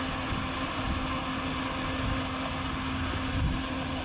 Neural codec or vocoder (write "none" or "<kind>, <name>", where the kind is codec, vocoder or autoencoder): none